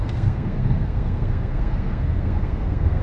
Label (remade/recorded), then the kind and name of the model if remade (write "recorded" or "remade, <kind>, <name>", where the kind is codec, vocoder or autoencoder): remade, codec, SNAC